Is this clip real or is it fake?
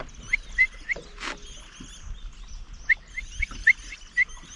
real